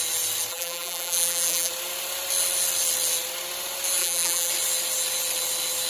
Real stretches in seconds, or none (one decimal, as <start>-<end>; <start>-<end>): 0.0-0.5; 1.7-4.0; 4.5-5.9